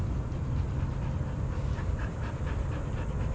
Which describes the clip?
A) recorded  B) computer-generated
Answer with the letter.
A